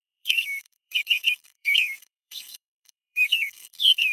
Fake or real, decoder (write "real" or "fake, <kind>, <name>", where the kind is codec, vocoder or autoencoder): fake, codec, SNAC